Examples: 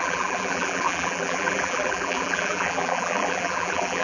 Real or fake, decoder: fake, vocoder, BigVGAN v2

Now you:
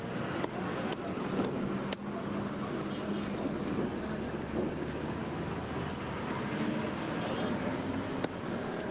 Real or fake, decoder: real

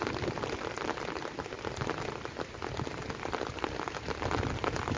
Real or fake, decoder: real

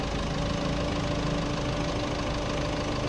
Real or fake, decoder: real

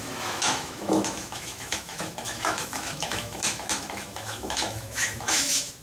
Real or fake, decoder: fake, autoencoder, DAC-VAE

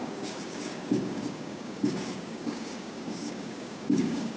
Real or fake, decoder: fake, codec, DAC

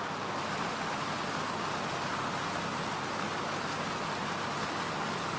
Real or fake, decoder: real